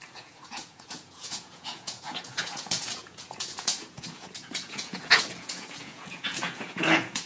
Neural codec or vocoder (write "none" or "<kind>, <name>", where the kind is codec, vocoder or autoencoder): vocoder, Vocos